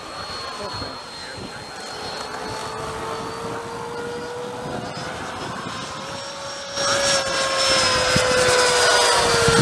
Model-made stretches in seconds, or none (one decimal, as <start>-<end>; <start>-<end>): none